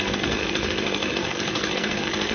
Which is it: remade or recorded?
remade